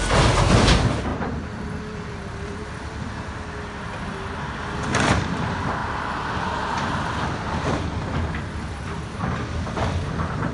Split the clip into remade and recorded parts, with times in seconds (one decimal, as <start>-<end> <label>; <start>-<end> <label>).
0.0-1.1 recorded; 1.1-3.1 remade; 3.1-10.5 recorded

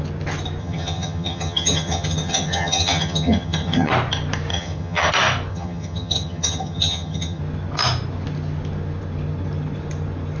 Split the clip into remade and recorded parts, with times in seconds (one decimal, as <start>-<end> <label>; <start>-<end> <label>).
0.0-0.6 recorded; 0.6-3.9 remade; 3.9-4.5 recorded; 4.5-5.1 remade; 5.1-5.5 recorded; 5.5-7.4 remade; 7.4-10.4 recorded

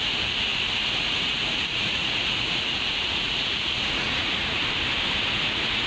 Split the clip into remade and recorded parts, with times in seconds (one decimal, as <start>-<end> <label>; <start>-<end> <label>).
0.0-4.6 remade; 4.6-5.3 recorded; 5.3-5.9 remade

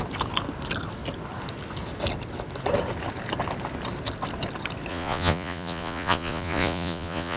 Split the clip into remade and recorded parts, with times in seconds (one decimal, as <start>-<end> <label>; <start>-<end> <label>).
0.0-4.9 recorded; 4.9-7.4 remade

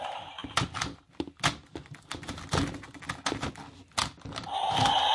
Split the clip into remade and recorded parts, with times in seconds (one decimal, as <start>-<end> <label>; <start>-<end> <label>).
0.0-5.1 recorded

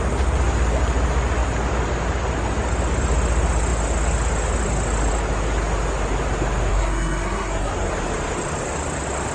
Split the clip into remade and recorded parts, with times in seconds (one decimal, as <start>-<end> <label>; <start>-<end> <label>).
0.0-6.7 recorded; 6.7-7.9 remade; 7.9-9.3 recorded

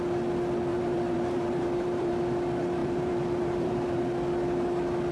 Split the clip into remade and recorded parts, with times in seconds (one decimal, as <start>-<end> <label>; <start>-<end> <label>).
0.0-0.7 recorded; 0.7-2.1 remade; 2.1-2.8 recorded; 2.8-4.0 remade; 4.0-5.1 recorded